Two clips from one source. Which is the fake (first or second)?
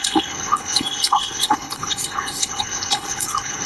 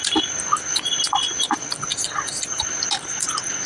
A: first